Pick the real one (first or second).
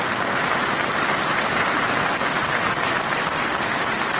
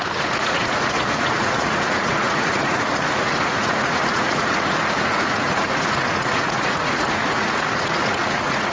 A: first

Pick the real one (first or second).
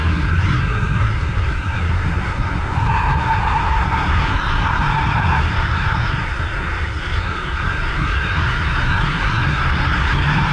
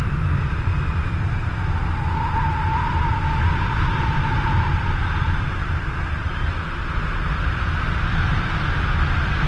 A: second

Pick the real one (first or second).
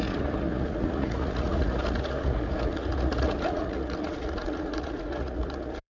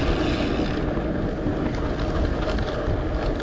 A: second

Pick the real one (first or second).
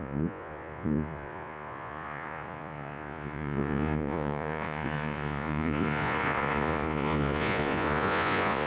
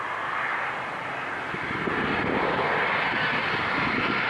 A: second